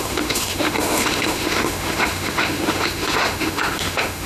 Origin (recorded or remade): remade